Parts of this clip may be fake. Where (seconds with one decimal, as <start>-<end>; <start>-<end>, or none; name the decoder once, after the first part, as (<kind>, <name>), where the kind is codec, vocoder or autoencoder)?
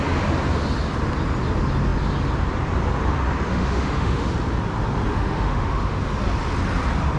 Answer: 3.5-4.3 (autoencoder, DAC-VAE); 5.1-6.0